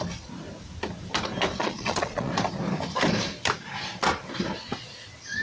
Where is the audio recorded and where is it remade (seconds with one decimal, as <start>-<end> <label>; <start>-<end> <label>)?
0.0-1.6 recorded; 1.6-2.3 remade; 2.3-5.4 recorded